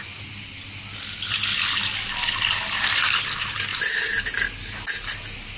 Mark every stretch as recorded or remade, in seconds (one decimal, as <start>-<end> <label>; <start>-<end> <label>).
0.0-3.7 recorded; 3.7-4.2 remade; 4.2-5.6 recorded